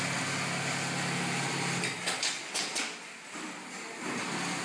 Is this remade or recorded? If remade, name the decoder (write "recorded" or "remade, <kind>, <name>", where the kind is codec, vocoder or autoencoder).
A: recorded